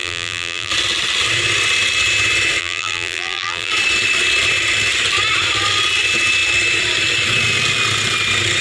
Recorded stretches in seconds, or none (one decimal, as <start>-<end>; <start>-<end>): 0.7-2.6; 3.7-8.6